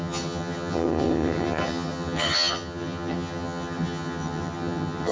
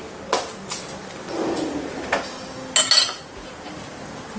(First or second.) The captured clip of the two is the second